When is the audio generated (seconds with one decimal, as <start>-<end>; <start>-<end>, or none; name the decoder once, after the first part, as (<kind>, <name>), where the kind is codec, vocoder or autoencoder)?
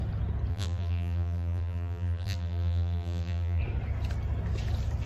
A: 0.5-3.6 (vocoder, BigVGAN v2)